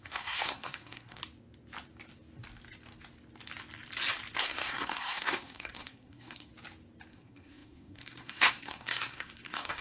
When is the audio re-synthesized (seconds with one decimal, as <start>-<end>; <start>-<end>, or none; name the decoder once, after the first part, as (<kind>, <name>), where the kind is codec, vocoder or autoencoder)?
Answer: 0.0-1.2 (codec, SNAC); 4.4-6.5; 7.1-9.8